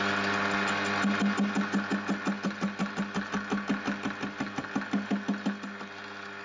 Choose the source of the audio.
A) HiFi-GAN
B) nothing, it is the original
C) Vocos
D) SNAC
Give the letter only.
B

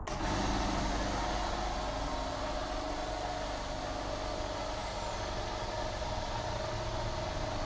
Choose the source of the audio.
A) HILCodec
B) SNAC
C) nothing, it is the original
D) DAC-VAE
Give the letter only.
C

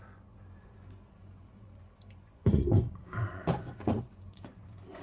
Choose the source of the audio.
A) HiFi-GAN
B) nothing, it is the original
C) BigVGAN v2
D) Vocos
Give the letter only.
D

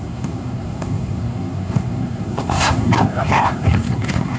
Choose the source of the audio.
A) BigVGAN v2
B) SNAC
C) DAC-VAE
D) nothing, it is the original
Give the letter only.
B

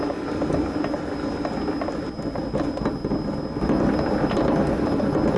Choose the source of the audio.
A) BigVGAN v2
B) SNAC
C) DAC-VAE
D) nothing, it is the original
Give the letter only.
D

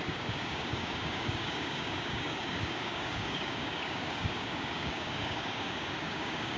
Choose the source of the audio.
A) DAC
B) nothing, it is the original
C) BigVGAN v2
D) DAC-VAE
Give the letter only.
A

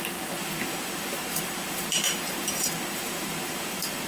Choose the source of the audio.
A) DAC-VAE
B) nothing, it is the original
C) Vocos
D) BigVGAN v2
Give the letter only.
D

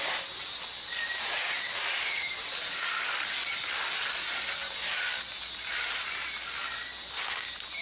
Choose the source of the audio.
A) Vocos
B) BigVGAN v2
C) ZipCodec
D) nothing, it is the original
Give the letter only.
D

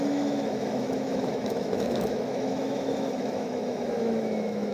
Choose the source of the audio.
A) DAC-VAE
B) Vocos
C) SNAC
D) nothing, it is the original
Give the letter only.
A